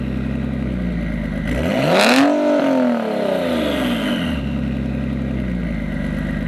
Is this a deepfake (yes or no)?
no